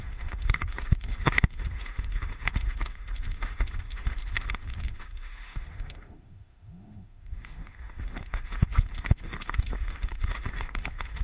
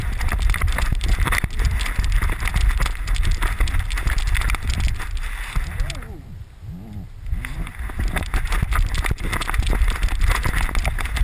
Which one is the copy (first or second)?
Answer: first